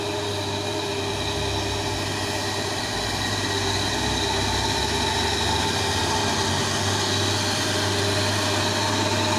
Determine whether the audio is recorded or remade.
recorded